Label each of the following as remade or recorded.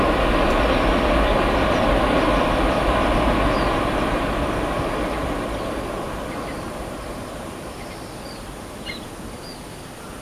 recorded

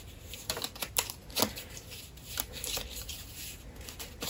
recorded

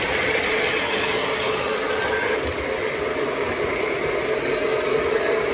recorded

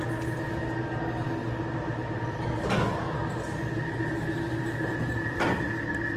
recorded